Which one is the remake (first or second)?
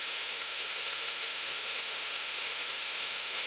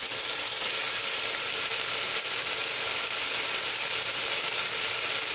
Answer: first